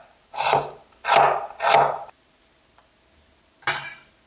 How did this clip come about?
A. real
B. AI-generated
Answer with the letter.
A